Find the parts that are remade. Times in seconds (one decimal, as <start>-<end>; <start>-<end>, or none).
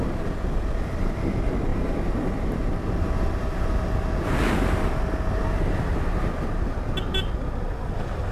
1.7-2.7